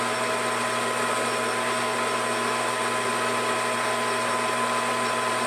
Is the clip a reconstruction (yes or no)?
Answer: no